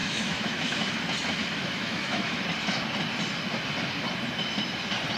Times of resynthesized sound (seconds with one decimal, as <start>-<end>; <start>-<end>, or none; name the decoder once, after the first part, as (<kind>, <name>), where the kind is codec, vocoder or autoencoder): 0.0-0.9 (autoencoder, DAC-VAE); 1.6-2.4